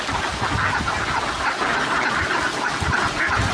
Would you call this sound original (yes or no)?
yes